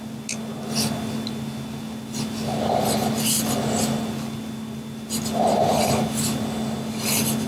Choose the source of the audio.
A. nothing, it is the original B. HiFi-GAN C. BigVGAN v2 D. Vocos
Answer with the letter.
A